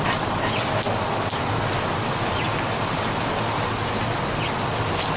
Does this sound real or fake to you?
real